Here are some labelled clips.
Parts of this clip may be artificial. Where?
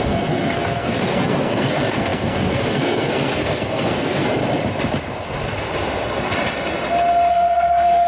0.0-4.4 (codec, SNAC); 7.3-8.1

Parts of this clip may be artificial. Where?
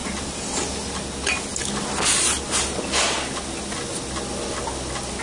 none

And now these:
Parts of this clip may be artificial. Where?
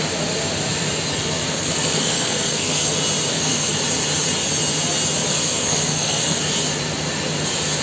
1.1-2.9 (codec, SNAC); 3.3-3.8; 5.3-6.4